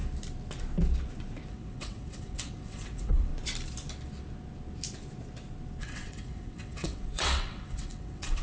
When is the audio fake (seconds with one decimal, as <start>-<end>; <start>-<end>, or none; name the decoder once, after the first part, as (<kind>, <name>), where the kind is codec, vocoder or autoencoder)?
1.5-3.3 (vocoder, WaveNeXt); 5.8-8.4